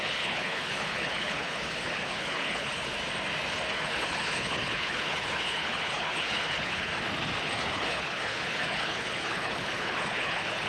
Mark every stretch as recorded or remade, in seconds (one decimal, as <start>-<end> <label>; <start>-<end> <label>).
0.0-2.9 remade; 2.9-3.7 recorded; 3.7-6.9 remade; 6.9-7.4 recorded; 7.4-10.7 remade